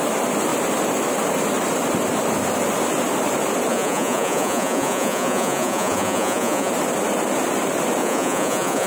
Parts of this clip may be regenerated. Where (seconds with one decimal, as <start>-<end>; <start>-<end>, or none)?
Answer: 3.7-6.7; 8.0-8.9